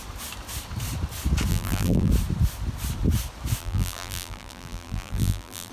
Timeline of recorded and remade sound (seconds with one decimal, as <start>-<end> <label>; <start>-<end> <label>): 0.0-1.5 recorded; 1.5-2.1 remade; 2.1-3.6 recorded; 3.6-5.7 remade